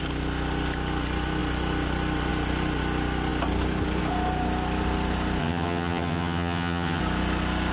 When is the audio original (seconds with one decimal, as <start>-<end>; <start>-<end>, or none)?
0.0-5.4; 7.0-7.7